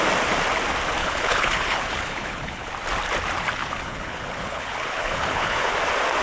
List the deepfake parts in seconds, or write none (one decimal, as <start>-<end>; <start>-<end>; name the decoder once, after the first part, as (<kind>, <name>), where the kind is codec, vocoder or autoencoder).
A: 1.0-2.7 (codec, HILCodec); 3.6-5.7